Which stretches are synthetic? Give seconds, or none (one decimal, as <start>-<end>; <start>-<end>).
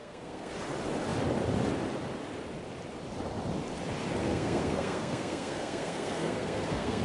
0.0-0.5; 4.2-7.0